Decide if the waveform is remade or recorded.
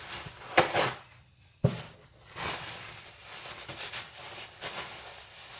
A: recorded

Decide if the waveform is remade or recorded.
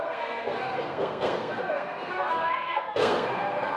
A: remade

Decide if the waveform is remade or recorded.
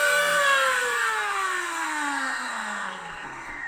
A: remade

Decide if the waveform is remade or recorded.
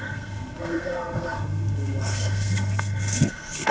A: remade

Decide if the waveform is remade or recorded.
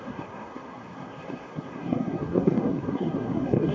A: remade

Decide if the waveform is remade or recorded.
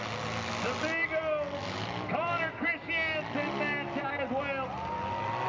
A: recorded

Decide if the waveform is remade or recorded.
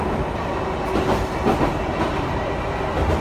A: recorded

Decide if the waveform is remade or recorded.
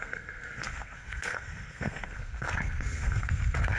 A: remade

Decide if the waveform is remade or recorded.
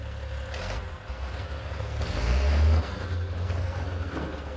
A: remade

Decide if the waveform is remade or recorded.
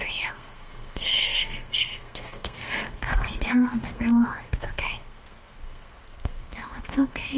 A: remade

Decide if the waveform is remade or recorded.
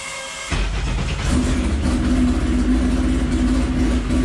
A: recorded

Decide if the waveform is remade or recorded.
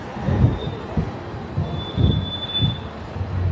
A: recorded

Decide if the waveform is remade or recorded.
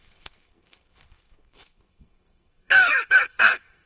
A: remade